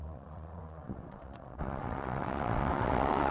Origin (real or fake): fake